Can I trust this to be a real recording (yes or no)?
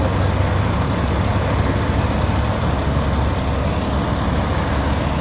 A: yes